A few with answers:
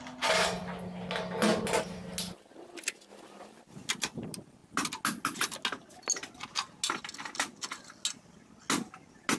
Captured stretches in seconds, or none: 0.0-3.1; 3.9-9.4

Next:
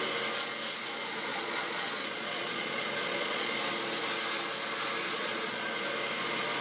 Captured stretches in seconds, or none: 0.0-1.3; 3.5-5.0; 5.7-6.6

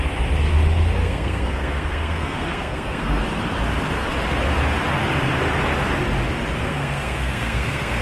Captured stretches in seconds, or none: 0.0-1.0; 3.2-6.6

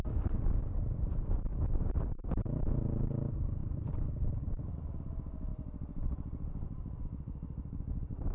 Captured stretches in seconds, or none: 0.0-1.5; 2.1-3.6; 4.4-5.5; 7.0-8.3

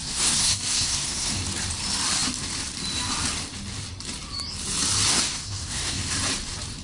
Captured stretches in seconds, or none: 1.4-5.1; 6.0-6.8

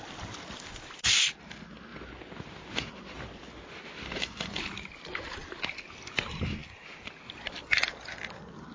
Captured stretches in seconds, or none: 0.0-8.7

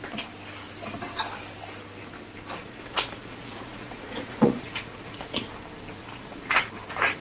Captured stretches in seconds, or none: 0.0-2.6; 5.5-6.0; 6.7-7.2

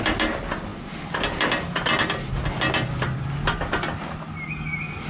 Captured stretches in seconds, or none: 0.0-5.1